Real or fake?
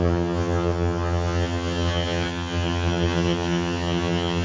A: fake